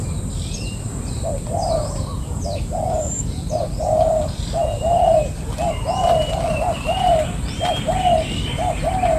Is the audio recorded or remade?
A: remade